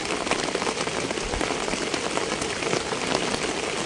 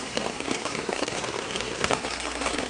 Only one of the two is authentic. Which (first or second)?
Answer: first